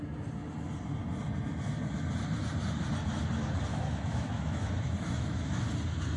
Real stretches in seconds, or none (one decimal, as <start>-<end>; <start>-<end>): 0.0-3.7; 5.6-6.2